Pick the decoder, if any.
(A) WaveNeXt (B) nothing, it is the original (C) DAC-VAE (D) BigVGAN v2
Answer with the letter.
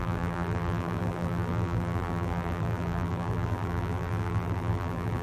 D